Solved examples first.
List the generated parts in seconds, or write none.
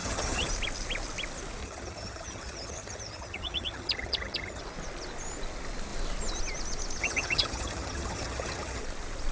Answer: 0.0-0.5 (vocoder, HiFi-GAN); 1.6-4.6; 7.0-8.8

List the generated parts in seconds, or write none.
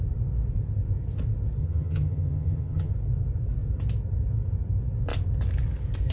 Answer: 1.6-2.9 (vocoder, HiFi-GAN)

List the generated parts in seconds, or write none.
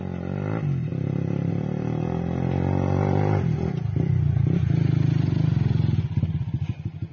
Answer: none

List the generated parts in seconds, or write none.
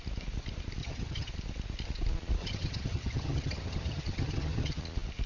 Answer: 0.8-1.3 (vocoder, HiFi-GAN); 2.4-4.8